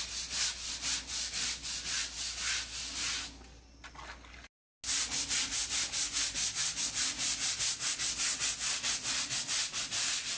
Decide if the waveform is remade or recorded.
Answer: recorded